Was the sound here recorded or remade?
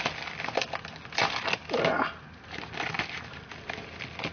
recorded